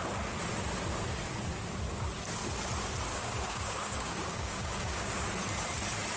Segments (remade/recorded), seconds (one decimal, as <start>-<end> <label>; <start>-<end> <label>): 0.0-3.1 recorded; 3.1-5.2 remade; 5.2-6.2 recorded